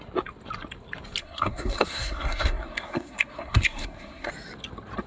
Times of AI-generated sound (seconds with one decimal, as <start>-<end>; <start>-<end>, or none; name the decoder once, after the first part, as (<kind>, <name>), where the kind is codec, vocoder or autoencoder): 1.2-4.3 (codec, SNAC)